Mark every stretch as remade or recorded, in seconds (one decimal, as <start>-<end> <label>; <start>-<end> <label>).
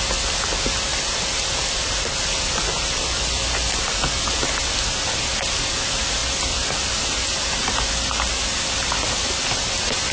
0.0-0.9 recorded; 0.9-4.3 remade; 4.3-6.2 recorded; 6.2-6.9 remade; 6.9-10.1 recorded